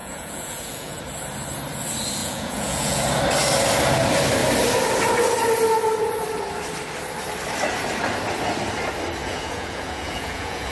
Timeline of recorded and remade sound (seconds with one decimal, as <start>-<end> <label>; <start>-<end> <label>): 0.0-1.0 remade; 1.0-2.2 recorded; 2.2-3.0 remade; 3.0-9.2 recorded; 9.2-10.7 remade

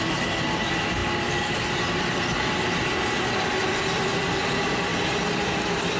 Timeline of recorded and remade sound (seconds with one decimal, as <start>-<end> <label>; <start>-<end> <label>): 0.0-6.0 recorded

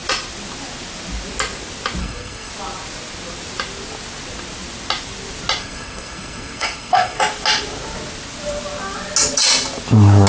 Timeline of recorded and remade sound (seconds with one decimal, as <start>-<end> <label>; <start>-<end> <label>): 0.0-2.0 recorded; 2.0-2.5 remade; 2.5-5.6 recorded; 5.6-7.2 remade; 7.2-10.3 recorded

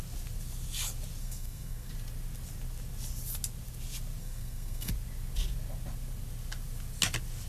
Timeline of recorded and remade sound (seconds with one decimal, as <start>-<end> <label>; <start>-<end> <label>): 0.0-1.2 recorded; 1.2-1.9 remade; 1.9-4.2 recorded; 4.2-4.9 remade; 4.9-7.5 recorded

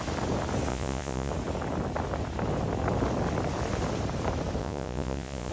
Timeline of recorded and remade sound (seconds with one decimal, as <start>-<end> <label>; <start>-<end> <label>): 0.0-0.7 recorded; 0.7-1.3 remade; 1.3-4.6 recorded; 4.6-5.5 remade

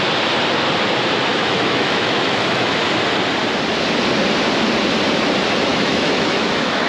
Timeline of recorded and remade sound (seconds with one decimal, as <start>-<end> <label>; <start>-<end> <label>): 0.0-1.3 recorded; 1.3-2.8 remade; 2.8-5.7 recorded; 5.7-6.9 remade

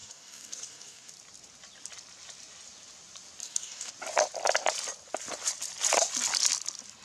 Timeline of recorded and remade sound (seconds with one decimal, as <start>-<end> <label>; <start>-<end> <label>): 0.0-1.1 remade; 1.1-3.4 recorded; 3.4-3.9 remade; 3.9-7.0 recorded

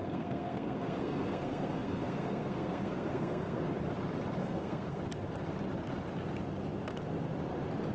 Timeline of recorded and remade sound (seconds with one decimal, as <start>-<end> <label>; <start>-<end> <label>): 0.0-3.6 remade; 3.6-4.4 recorded; 4.4-5.0 remade; 5.0-7.9 recorded